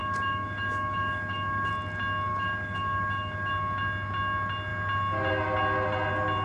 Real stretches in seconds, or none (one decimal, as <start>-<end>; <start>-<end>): 1.7-2.3; 3.5-6.4